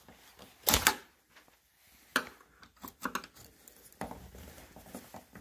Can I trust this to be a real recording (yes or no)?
yes